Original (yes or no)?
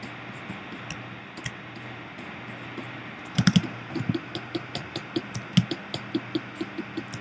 yes